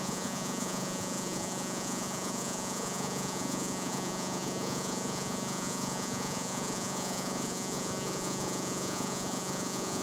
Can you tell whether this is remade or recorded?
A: remade